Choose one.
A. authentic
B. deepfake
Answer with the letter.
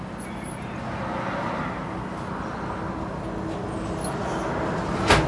A